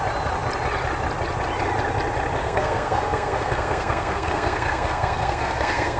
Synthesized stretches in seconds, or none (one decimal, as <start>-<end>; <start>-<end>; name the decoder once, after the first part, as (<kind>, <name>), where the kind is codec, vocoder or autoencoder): 2.4-6.0 (codec, SNAC)